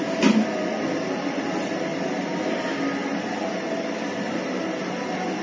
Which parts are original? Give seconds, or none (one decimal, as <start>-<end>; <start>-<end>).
0.0-5.4